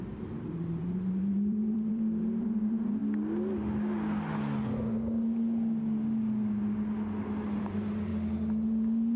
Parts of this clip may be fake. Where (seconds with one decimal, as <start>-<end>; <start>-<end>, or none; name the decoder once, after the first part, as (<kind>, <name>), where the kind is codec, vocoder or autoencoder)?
0.0-3.0 (vocoder, BigVGAN v2); 7.6-8.1